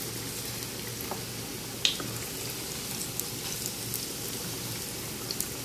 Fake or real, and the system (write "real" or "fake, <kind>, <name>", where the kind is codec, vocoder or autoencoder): real